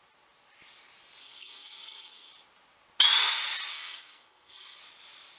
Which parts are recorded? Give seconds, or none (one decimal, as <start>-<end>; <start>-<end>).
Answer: 0.0-1.2; 2.3-3.7; 4.8-5.4